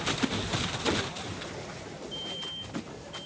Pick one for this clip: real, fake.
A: real